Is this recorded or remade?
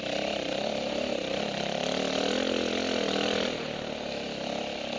recorded